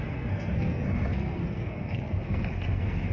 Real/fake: fake